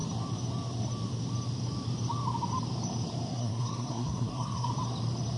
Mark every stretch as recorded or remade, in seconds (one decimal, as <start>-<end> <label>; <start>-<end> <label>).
0.0-3.3 recorded; 3.3-4.7 remade; 4.7-5.4 recorded